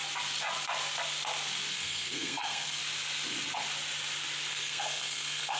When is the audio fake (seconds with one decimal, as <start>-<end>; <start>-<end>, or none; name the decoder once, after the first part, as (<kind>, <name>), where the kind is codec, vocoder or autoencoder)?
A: 1.7-2.8 (codec, SNAC); 4.5-5.6